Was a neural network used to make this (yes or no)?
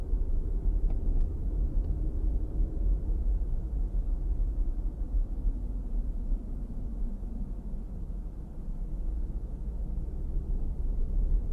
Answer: no